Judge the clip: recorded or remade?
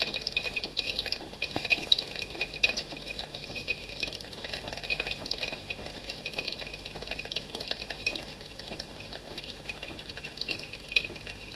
remade